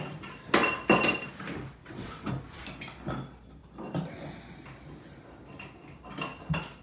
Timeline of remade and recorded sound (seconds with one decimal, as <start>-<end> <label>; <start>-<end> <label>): 0.0-1.8 recorded; 1.8-2.3 remade; 2.3-6.8 recorded